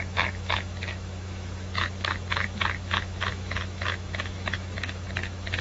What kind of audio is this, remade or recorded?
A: remade